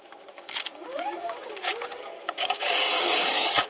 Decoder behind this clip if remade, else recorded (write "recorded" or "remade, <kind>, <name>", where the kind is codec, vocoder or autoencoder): remade, codec, DAC